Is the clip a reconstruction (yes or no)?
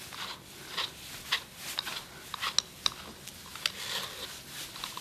no